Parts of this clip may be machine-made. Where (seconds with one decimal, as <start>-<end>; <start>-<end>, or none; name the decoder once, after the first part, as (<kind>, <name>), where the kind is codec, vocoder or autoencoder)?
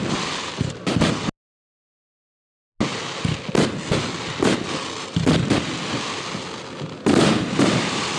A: none